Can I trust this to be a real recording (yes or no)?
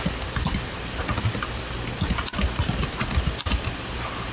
yes